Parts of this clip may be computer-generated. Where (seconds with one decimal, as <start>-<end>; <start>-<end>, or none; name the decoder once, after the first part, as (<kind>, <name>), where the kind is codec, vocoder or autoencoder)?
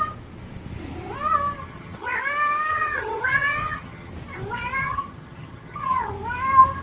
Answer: 1.6-2.2 (vocoder, HiFi-GAN); 2.7-4.1; 4.8-6.1